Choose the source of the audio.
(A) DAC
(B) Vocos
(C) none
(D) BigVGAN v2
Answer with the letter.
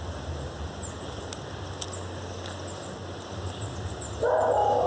C